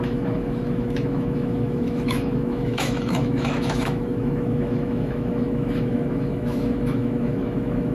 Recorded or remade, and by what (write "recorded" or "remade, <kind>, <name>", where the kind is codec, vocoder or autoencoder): remade, autoencoder, DAC-VAE